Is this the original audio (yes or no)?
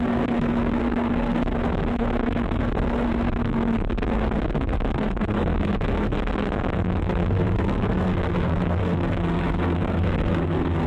no